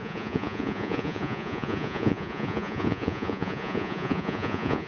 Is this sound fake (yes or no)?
yes